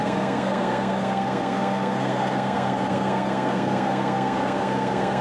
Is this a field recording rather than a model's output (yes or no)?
no